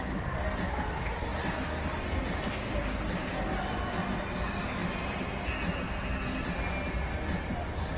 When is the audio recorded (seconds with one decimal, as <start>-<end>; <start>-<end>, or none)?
0.0-8.0